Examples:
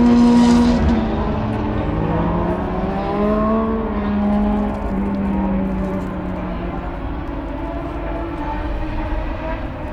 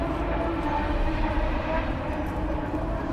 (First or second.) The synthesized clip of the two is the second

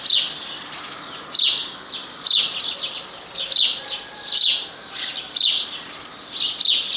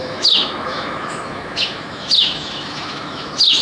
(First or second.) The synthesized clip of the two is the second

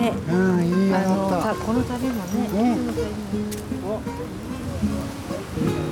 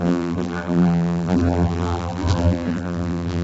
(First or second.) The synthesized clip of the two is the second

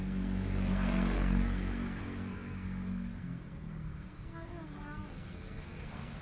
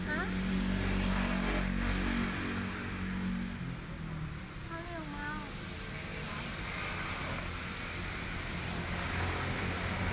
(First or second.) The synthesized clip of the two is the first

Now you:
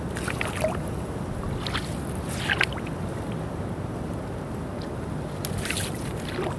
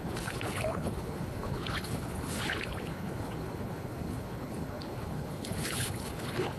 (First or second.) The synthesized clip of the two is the second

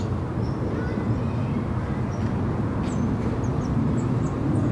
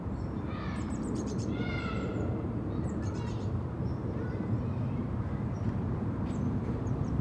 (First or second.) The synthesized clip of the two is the second